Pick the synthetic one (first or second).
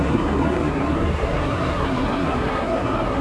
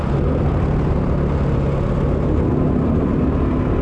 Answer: first